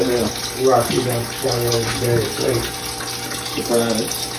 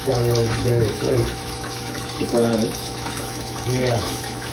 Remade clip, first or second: second